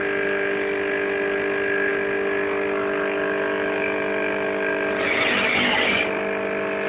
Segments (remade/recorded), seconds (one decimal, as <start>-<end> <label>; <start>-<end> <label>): 0.0-6.9 recorded